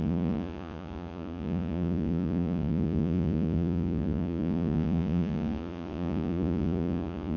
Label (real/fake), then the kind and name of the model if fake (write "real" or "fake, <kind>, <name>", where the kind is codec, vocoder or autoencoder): fake, vocoder, Vocos